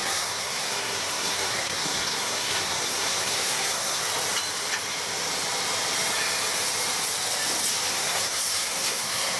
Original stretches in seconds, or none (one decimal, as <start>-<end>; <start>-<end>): 4.0-7.9